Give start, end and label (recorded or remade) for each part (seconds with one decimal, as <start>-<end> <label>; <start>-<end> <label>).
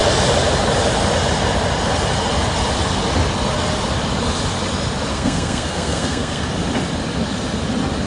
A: 0.0-5.1 recorded; 5.1-6.5 remade; 6.5-8.1 recorded